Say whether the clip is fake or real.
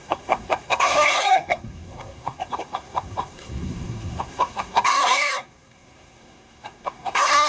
fake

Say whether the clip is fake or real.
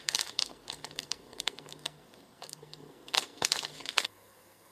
fake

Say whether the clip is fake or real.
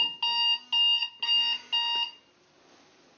real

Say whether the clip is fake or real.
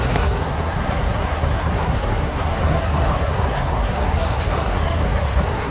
fake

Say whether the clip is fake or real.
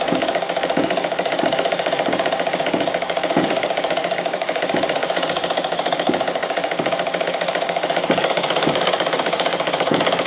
fake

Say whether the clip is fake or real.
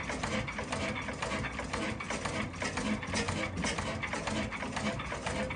real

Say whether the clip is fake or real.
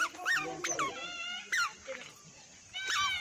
real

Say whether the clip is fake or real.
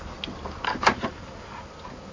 real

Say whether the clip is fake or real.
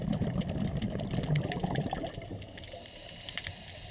real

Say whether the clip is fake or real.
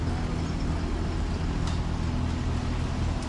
real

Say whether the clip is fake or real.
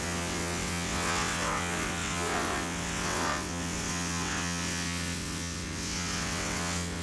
fake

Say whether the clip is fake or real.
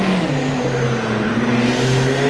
real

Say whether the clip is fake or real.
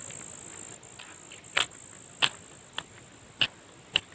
real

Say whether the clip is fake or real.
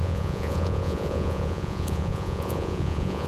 fake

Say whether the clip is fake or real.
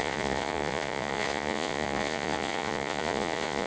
fake